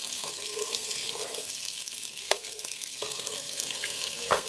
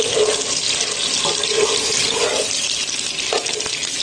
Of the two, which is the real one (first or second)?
second